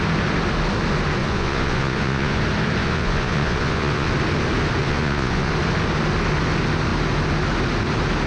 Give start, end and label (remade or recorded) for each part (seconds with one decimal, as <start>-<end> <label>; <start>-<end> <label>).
0.0-1.2 recorded; 1.2-2.4 remade; 2.4-2.8 recorded; 2.8-4.1 remade; 4.1-4.8 recorded; 4.8-5.5 remade; 5.5-8.3 recorded